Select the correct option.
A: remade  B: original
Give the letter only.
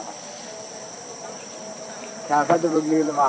A